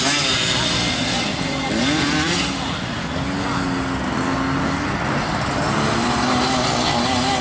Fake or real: real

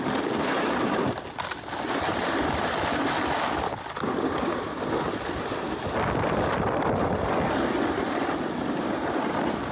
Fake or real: real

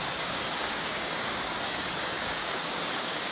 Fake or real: fake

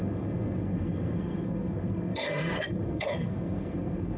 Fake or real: fake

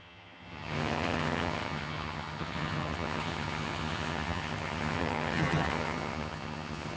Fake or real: fake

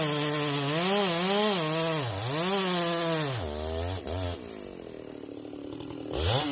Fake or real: real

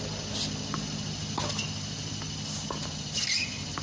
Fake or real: real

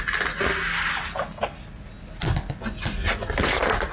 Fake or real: real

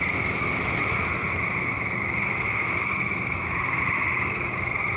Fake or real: fake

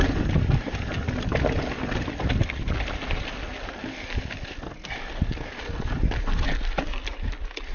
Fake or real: real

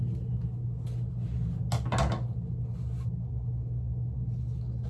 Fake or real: real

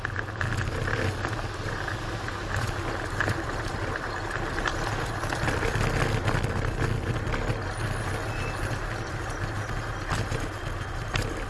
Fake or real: real